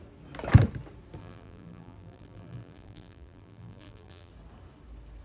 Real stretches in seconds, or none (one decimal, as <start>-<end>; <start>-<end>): 0.0-1.2; 4.3-5.2